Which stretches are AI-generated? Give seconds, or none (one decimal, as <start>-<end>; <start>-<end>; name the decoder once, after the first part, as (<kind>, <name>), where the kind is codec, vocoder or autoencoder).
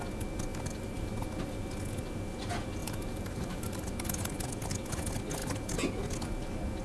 0.5-1.1 (vocoder, BigVGAN v2); 2.8-3.9